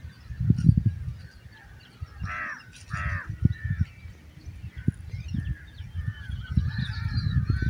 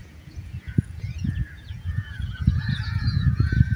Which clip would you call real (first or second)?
first